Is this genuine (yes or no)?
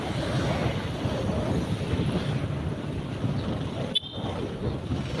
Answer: yes